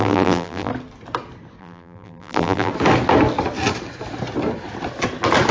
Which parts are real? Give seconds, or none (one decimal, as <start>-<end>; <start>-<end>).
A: 0.7-1.6; 2.7-5.5